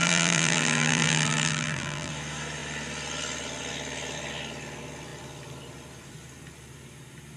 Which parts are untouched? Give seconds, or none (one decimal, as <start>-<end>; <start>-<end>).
2.1-7.4